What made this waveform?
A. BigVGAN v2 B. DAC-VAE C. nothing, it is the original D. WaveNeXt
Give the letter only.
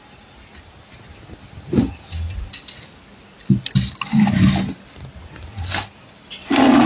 C